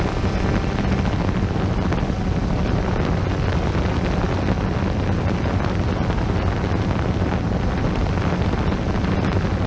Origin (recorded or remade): recorded